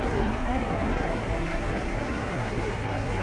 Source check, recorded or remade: remade